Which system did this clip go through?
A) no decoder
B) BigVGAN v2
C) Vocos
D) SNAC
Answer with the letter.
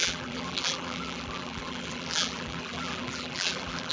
B